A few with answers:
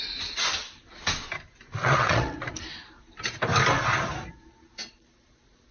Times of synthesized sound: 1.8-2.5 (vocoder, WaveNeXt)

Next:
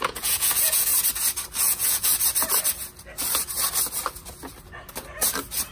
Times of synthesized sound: 0.0-0.9 (vocoder, Vocos); 1.6-2.1

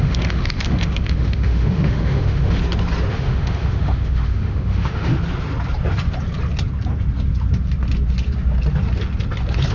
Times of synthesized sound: 0.0-2.6 (autoencoder, DAC-VAE); 3.1-5.1